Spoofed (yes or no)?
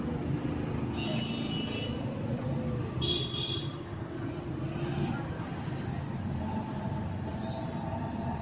no